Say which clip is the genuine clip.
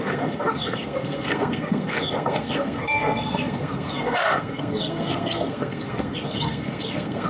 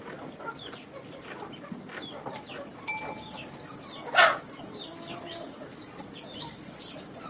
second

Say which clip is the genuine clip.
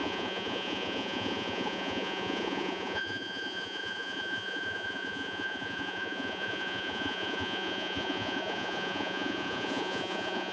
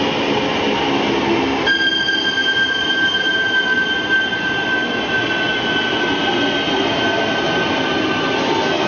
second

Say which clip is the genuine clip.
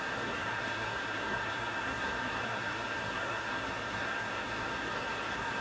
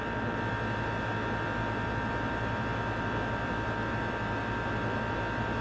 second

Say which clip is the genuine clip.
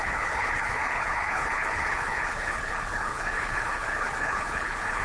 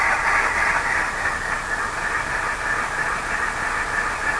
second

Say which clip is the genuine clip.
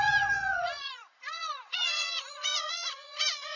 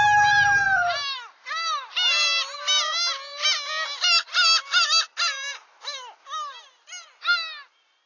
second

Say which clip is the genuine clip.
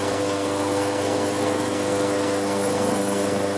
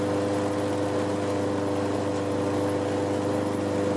second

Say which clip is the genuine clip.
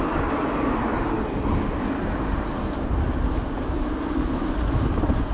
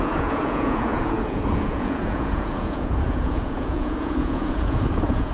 first